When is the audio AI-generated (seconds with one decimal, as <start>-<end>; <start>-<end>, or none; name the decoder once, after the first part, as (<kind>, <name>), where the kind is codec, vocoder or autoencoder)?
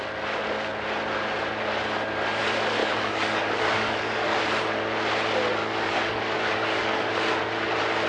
2.8-4.4 (codec, DAC); 5.6-7.3